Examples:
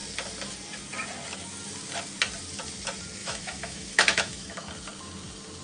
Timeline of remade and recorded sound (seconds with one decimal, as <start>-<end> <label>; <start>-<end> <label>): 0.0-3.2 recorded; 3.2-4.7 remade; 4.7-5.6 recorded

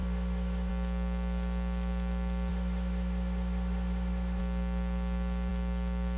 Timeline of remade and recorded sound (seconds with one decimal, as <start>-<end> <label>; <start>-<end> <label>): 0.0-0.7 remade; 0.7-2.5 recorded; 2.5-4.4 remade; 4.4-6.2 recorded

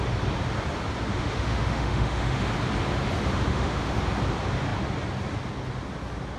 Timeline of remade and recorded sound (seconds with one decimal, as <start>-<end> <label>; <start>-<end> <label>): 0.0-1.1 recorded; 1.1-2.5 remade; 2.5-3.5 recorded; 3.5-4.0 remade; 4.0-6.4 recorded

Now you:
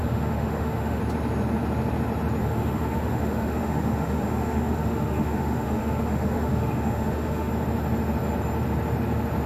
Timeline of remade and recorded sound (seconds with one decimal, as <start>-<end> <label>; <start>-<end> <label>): 0.0-1.0 remade; 1.0-2.4 recorded; 2.4-7.5 remade; 7.5-9.5 recorded

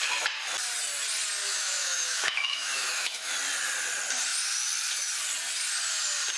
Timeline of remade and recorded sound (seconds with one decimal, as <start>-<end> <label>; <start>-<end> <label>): 0.0-1.4 recorded; 1.4-3.3 remade; 3.3-6.4 recorded